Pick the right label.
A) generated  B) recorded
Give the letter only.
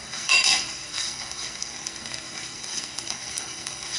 A